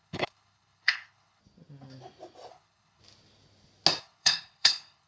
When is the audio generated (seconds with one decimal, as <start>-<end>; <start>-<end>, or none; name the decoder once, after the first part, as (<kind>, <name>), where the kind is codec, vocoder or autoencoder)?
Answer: 0.0-1.4 (codec, HILCodec); 2.5-3.0; 4.0-5.1